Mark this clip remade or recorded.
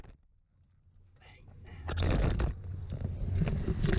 recorded